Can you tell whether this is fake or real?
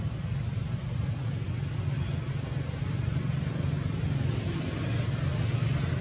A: real